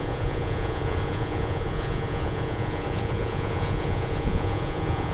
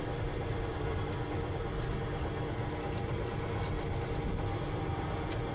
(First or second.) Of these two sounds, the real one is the second